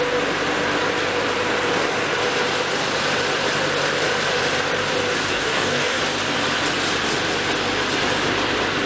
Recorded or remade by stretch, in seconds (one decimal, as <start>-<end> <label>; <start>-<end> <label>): 0.0-5.3 recorded; 5.3-6.0 remade; 6.0-8.9 recorded